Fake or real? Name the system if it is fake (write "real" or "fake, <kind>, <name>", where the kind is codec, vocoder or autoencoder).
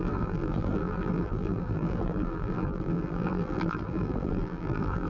fake, vocoder, BigVGAN v2